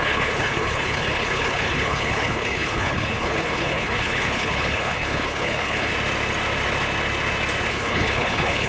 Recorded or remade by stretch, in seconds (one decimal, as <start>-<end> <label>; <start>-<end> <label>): 0.0-5.9 remade; 5.9-7.7 recorded; 7.7-8.7 remade